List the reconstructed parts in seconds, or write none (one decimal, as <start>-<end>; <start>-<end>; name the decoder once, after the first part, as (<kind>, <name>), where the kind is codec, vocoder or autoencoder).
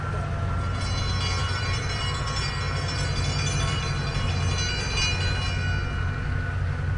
1.4-4.1 (vocoder, BigVGAN v2)